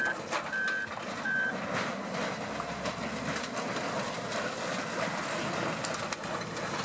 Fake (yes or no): no